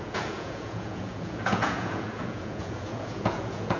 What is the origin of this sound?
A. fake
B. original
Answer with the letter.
A